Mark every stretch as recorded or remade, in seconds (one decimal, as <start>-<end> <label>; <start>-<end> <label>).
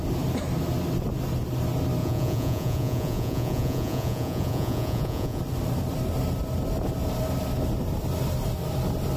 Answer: 0.0-2.0 recorded; 2.0-5.4 remade; 5.4-9.2 recorded